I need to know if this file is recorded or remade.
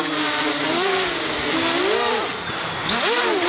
recorded